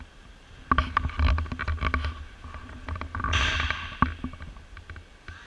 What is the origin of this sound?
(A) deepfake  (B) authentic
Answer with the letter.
B